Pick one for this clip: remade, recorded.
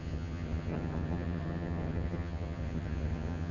remade